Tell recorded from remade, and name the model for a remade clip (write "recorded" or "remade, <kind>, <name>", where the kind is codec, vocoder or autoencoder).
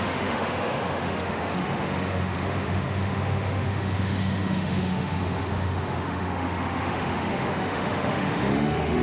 remade, autoencoder, DAC-VAE